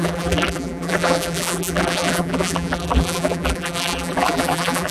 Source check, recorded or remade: remade